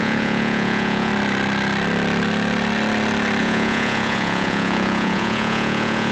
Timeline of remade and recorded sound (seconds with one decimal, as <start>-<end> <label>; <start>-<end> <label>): 0.0-1.1 remade; 1.1-3.4 recorded; 3.4-6.1 remade